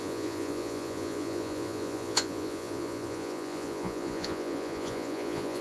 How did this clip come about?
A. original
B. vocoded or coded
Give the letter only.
B